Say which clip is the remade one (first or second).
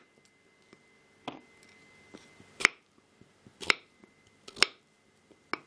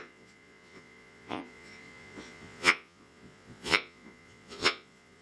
second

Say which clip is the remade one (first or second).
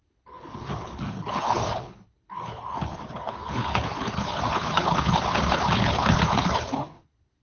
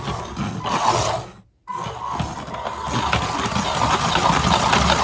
first